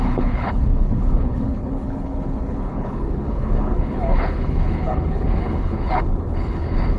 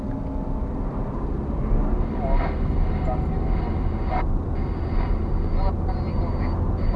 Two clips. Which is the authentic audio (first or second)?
second